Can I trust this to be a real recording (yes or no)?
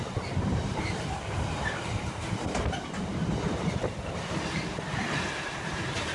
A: no